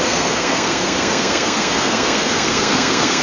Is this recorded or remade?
remade